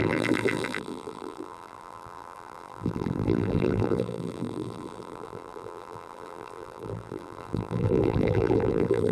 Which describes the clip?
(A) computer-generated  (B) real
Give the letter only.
A